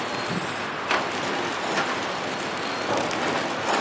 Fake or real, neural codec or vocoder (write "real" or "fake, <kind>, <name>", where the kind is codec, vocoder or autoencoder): real